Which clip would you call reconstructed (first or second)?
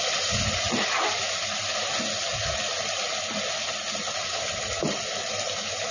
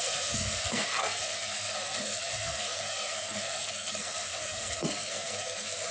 second